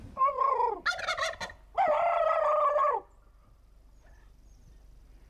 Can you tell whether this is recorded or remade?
recorded